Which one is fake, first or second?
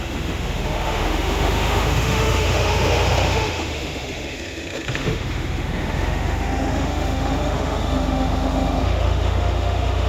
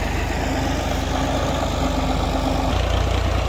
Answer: first